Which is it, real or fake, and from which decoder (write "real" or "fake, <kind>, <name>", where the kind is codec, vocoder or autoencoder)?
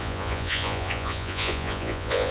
fake, vocoder, Vocos